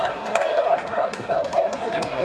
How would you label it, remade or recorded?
remade